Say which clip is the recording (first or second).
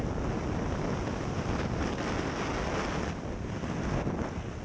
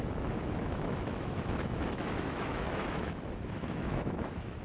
first